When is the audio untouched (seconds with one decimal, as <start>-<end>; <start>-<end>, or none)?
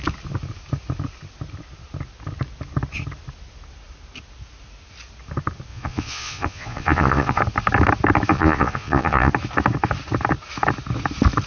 0.0-5.7; 7.4-8.3; 9.3-11.5